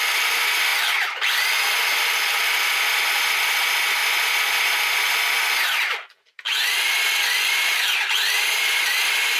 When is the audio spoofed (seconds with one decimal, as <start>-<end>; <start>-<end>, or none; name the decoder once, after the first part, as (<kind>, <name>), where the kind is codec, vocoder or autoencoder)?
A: none